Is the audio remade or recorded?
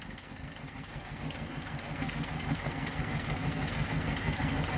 remade